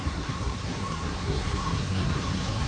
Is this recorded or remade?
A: remade